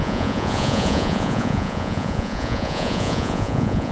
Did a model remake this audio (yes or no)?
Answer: yes